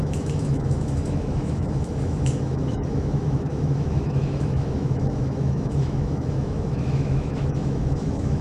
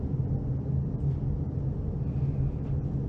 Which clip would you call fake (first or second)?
first